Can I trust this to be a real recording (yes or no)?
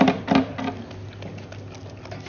yes